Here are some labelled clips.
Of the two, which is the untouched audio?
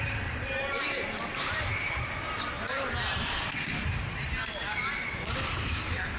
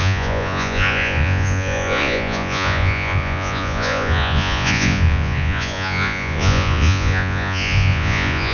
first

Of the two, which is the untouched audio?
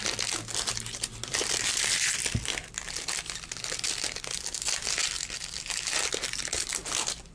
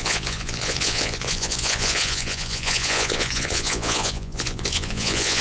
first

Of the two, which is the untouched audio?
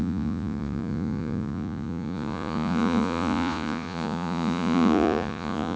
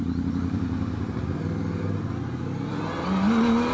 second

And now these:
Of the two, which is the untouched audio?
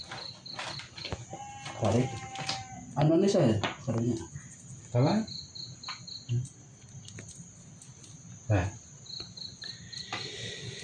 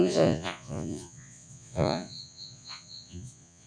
first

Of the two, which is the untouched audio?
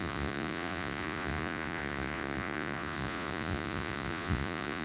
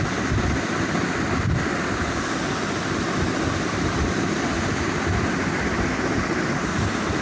second